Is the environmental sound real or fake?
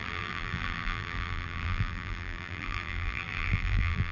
fake